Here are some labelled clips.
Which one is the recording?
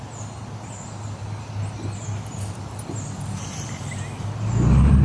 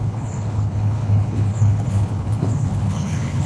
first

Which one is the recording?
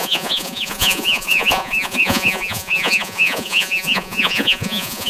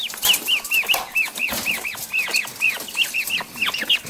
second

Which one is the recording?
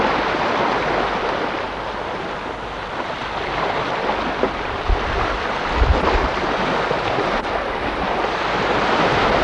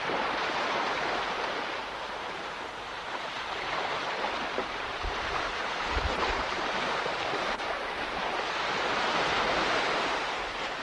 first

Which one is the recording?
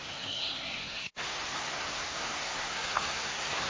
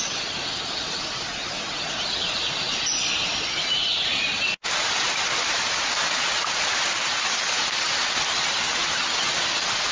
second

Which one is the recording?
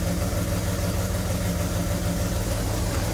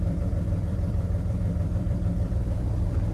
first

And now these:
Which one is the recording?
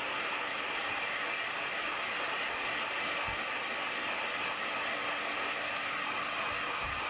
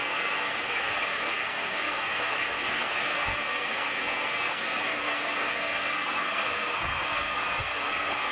first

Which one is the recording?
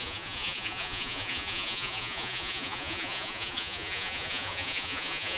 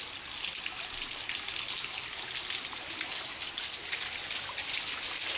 second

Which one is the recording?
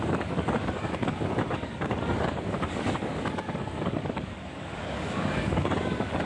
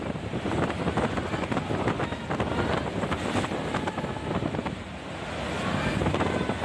second